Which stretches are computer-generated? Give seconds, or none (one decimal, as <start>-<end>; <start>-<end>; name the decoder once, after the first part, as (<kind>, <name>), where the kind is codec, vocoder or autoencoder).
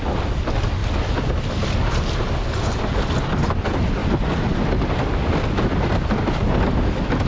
none